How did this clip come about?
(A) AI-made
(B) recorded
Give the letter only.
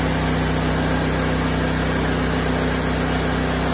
B